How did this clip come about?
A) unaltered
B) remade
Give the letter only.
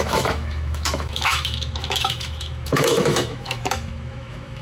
B